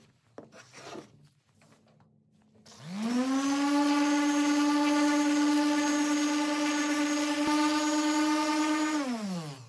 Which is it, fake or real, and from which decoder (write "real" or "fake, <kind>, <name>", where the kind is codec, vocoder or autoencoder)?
real